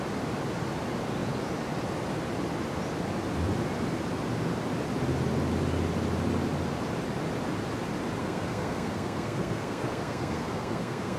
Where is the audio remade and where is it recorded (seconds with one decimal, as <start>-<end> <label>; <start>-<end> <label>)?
0.0-8.2 recorded; 8.2-11.2 remade